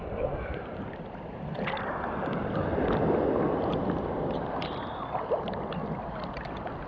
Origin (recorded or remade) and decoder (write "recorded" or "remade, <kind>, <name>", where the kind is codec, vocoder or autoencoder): recorded